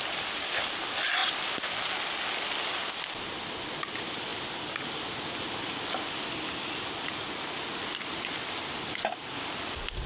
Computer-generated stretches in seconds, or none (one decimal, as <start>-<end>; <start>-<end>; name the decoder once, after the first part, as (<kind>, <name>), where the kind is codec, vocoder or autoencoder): none

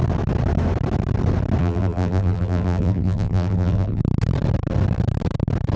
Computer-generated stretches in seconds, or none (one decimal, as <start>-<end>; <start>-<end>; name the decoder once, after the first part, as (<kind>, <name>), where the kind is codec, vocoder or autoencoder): 1.6-4.0 (vocoder, BigVGAN v2)

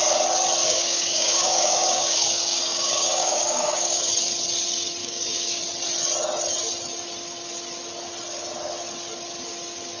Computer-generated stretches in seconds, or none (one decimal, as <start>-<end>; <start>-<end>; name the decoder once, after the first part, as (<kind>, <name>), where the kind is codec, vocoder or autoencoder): 0.6-4.0 (codec, DAC); 5.0-5.6

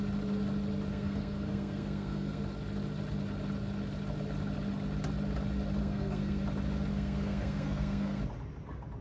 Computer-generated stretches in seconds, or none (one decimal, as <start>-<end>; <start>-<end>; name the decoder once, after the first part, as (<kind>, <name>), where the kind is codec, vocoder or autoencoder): 0.9-2.4 (codec, SNAC); 5.8-6.4; 6.9-8.2

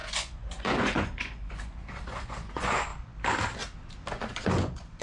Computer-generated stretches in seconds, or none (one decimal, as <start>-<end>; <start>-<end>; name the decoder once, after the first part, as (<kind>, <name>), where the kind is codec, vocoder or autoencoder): 0.0-2.9 (vocoder, Vocos); 4.1-5.0

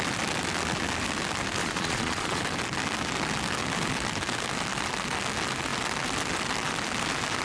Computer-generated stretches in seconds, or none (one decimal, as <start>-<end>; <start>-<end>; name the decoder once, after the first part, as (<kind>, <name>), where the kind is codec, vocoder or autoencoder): 1.6-2.4 (vocoder, Vocos)

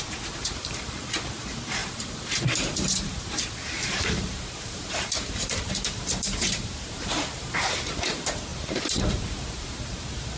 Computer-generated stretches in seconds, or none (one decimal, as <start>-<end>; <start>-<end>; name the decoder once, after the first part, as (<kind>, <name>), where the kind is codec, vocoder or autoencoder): 0.0-10.4 (vocoder, BigVGAN v2)